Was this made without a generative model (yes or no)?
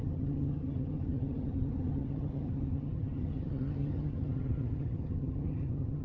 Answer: no